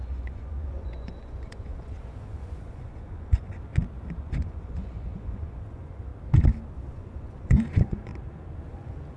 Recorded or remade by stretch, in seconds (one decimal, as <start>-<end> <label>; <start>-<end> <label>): 0.0-3.7 remade; 3.7-4.2 recorded; 4.2-6.1 remade; 6.1-6.9 recorded; 6.9-8.1 remade; 8.1-8.7 recorded; 8.7-9.2 remade